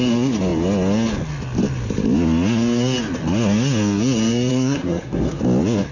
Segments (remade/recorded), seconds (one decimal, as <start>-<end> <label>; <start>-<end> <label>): 0.0-4.5 recorded; 4.5-5.4 remade; 5.4-5.9 recorded